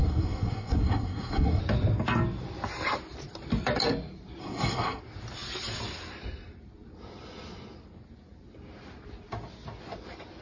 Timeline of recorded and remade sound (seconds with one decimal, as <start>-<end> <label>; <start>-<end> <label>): 0.0-1.6 remade; 1.6-4.4 recorded; 4.4-5.0 remade; 5.0-10.4 recorded

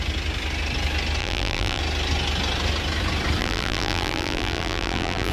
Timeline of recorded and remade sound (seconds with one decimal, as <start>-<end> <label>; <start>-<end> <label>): 0.0-1.2 recorded; 1.2-1.8 remade; 1.8-3.4 recorded; 3.4-5.3 remade

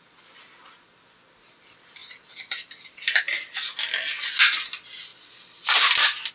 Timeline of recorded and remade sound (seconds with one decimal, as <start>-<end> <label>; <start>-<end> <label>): 0.0-2.0 recorded; 2.0-3.2 remade; 3.2-5.1 recorded; 5.1-6.3 remade

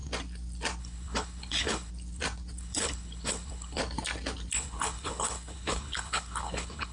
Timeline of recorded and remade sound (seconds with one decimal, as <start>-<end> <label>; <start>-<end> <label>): 0.0-0.8 recorded; 0.8-1.9 remade; 1.9-2.6 recorded; 2.6-3.8 remade; 3.8-4.5 recorded; 4.5-6.9 remade

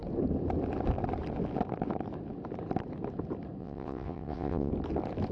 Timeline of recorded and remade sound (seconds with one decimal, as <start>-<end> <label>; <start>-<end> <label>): 0.0-3.6 recorded; 3.6-4.7 remade; 4.7-5.3 recorded

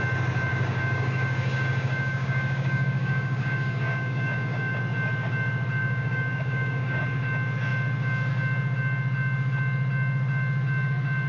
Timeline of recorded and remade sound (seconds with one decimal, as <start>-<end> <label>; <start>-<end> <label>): 0.0-0.5 recorded; 0.5-4.8 remade; 4.8-5.8 recorded; 5.8-7.0 remade; 7.0-11.3 recorded